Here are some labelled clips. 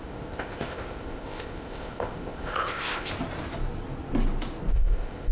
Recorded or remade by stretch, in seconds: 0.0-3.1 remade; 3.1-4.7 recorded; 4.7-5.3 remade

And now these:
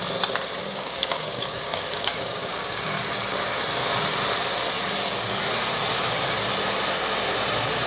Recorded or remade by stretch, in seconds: 0.0-0.6 recorded; 0.6-3.0 remade; 3.0-7.9 recorded

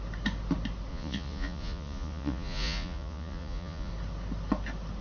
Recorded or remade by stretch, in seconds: 0.0-0.9 recorded; 0.9-3.9 remade; 3.9-5.0 recorded

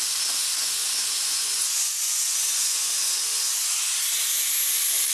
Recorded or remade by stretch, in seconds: 0.0-0.6 recorded; 0.6-3.7 remade; 3.7-5.1 recorded

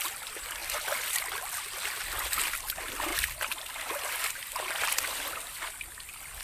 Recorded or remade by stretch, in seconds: 0.0-0.6 remade; 0.6-2.0 recorded; 2.0-6.4 remade

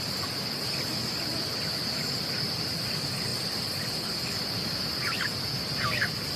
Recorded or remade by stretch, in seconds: 0.0-6.4 recorded

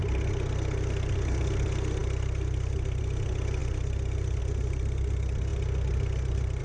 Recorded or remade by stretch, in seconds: 0.0-6.6 recorded

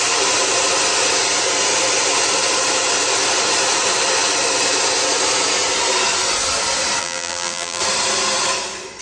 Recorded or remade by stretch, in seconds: 0.0-7.0 recorded; 7.0-7.8 remade; 7.8-9.0 recorded